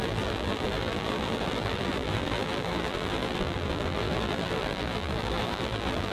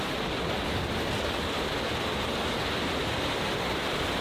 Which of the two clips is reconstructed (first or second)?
first